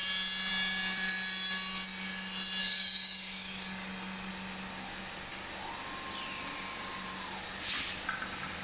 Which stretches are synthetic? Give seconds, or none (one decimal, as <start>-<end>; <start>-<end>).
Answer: 2.6-4.3